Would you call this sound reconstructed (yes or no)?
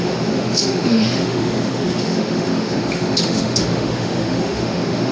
yes